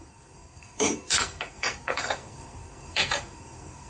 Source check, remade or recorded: remade